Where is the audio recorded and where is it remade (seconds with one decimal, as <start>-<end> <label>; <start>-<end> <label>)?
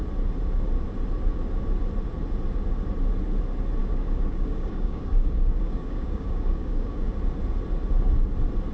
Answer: 0.0-3.8 recorded; 3.8-7.1 remade; 7.1-8.7 recorded